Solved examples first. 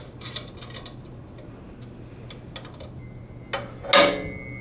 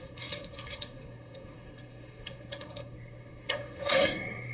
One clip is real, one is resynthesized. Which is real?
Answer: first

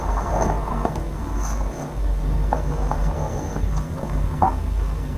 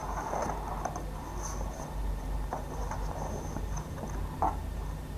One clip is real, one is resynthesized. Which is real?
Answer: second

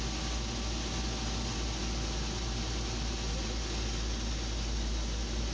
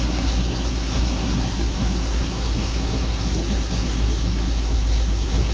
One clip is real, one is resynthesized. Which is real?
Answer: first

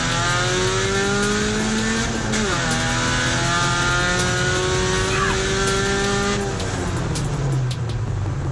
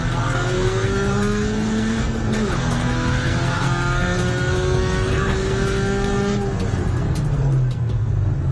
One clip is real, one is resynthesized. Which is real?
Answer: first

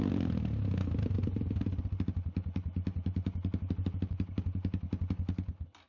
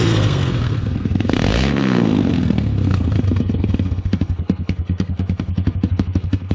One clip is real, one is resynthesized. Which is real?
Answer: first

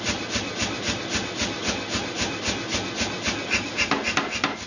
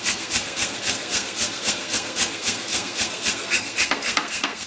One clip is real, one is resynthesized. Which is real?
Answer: first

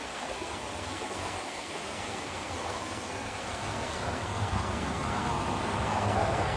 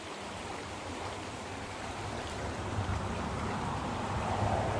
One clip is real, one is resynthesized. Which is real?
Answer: second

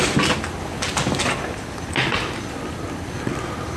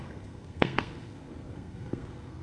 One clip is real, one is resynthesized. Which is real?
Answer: first